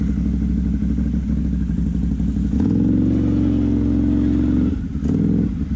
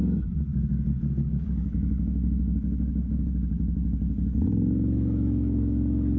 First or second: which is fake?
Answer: second